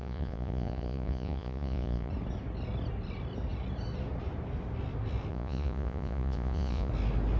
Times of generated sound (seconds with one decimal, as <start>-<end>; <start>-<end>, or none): 0.0-2.1; 5.3-6.9

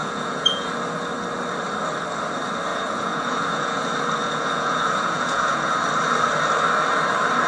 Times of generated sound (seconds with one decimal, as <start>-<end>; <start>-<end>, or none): 0.0-0.7; 2.7-3.8; 4.2-5.7